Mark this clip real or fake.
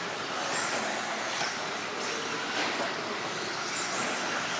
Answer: real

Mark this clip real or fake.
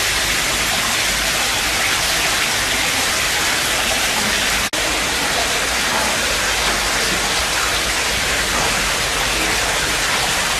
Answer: real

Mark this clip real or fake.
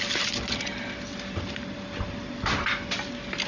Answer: real